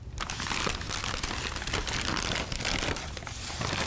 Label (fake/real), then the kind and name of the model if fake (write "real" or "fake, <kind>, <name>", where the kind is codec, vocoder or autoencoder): real